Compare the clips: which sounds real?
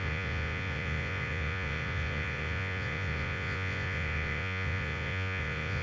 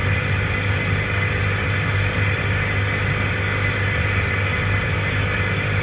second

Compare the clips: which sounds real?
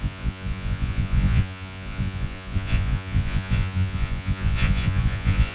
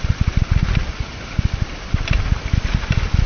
second